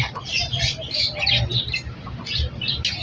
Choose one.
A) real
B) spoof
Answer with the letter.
A